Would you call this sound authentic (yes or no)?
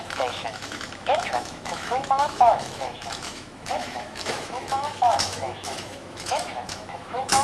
no